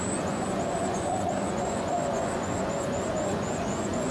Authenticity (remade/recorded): remade